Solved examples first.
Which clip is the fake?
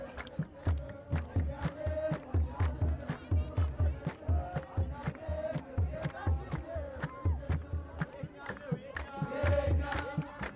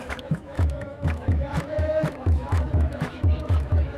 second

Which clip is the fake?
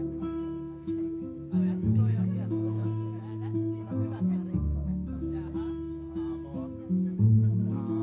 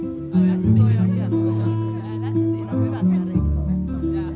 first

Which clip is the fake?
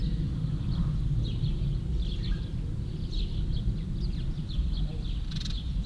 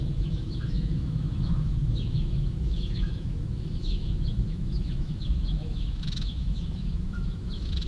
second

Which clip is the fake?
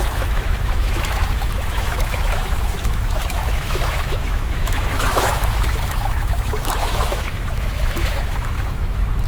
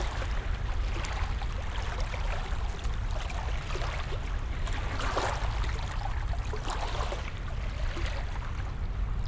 first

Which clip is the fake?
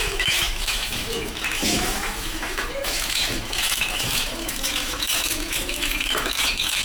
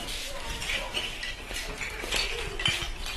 first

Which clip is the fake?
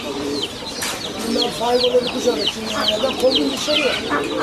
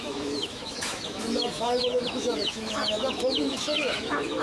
second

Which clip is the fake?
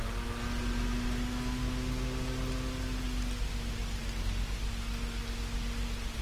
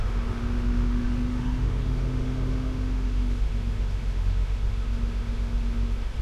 second